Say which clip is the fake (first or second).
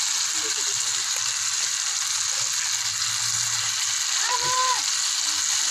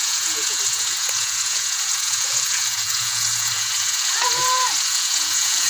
second